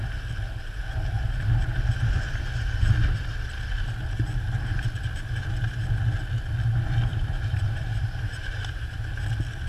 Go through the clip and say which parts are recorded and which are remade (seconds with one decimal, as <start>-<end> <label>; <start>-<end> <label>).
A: 0.0-7.1 recorded; 7.1-9.1 remade; 9.1-9.7 recorded